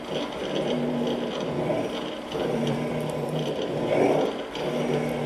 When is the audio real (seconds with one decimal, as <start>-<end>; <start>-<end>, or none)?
0.0-0.4; 3.6-5.3